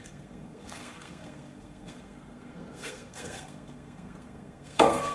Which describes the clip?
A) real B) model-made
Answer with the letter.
B